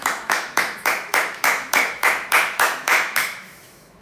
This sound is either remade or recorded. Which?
remade